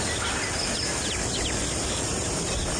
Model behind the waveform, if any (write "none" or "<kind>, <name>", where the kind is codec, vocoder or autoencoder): none